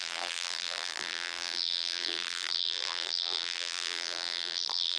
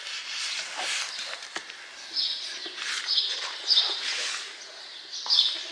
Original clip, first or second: second